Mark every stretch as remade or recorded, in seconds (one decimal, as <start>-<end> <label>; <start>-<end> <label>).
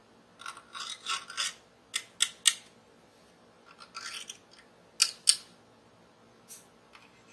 0.0-7.3 recorded